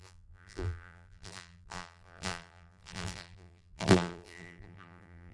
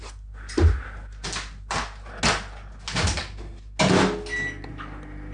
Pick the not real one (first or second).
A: first